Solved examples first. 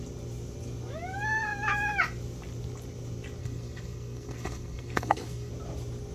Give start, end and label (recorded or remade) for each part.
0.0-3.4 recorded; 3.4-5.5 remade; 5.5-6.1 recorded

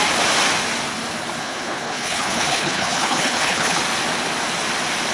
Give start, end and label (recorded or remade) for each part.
0.0-1.4 recorded; 1.4-3.8 remade; 3.8-5.1 recorded

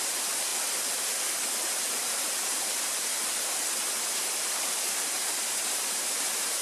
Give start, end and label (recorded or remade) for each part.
0.0-0.5 remade; 0.5-1.7 recorded; 1.7-3.1 remade; 3.1-4.5 recorded; 4.5-6.6 remade